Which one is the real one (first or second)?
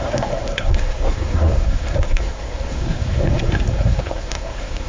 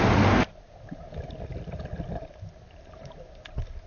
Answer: second